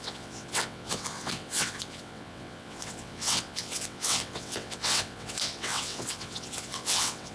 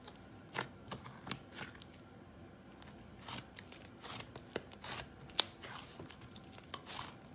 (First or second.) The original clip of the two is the second